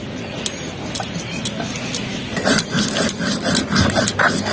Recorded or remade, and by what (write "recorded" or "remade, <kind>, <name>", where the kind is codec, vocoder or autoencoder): recorded